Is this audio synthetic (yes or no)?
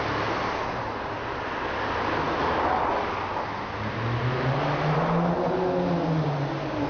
no